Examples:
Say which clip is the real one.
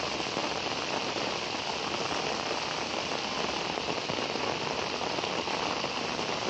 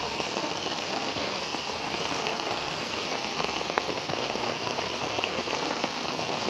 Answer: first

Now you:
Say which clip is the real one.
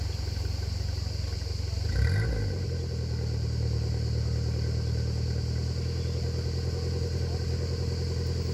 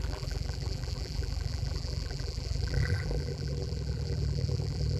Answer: first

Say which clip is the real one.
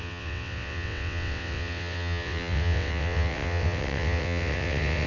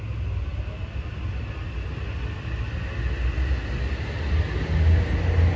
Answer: second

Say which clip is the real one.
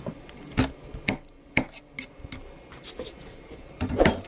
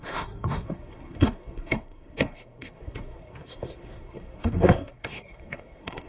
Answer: first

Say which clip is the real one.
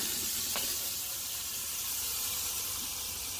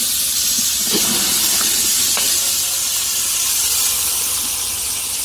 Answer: second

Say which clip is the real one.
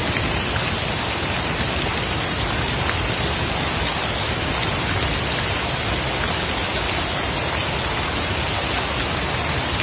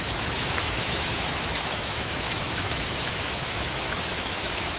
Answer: first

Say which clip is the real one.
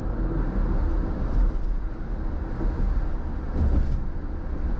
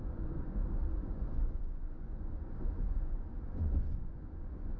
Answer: first